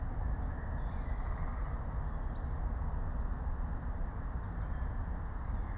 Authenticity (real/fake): real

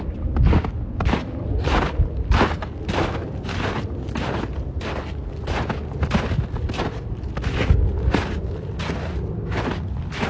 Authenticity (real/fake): real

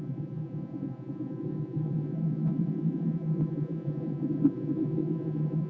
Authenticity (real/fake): fake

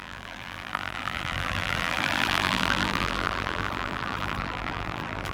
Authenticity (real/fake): fake